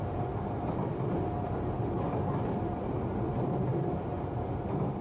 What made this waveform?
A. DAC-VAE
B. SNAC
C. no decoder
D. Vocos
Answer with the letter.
C